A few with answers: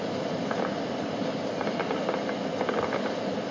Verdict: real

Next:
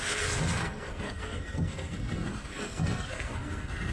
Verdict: fake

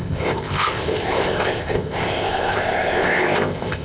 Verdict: fake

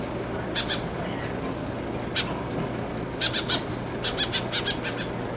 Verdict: real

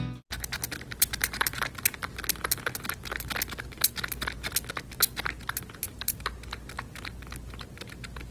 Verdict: real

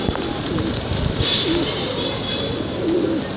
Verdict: real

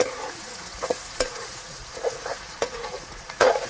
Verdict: fake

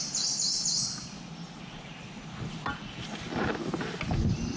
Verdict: real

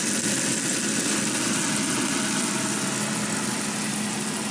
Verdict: real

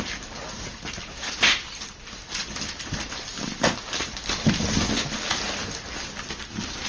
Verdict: real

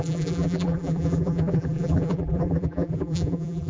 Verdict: fake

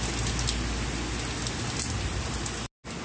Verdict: real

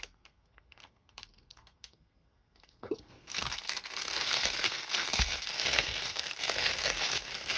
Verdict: fake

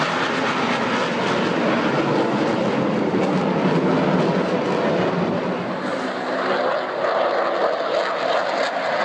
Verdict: real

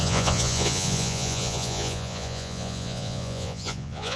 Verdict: fake